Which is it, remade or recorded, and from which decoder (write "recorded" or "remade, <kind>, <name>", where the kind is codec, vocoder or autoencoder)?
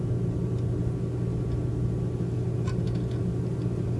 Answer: recorded